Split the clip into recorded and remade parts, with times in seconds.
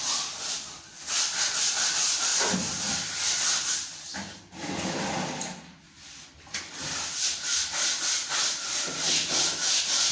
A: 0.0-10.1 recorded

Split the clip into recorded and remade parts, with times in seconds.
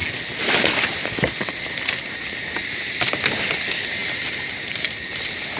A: 0.0-5.6 recorded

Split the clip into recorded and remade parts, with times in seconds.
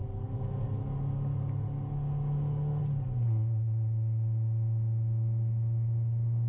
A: 0.0-6.5 recorded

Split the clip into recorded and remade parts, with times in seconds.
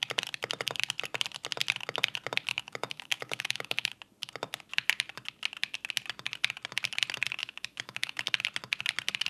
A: 0.0-2.5 recorded; 2.5-3.9 remade; 3.9-7.4 recorded; 7.4-8.3 remade; 8.3-9.3 recorded